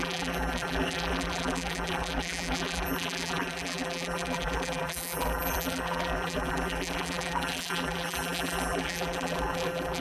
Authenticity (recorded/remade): remade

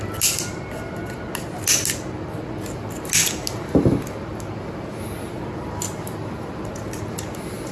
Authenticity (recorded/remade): recorded